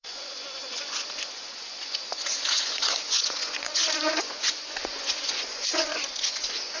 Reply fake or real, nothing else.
fake